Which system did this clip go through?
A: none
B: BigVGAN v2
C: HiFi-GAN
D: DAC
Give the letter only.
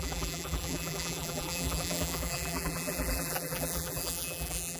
B